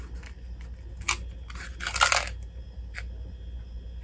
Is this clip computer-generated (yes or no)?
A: no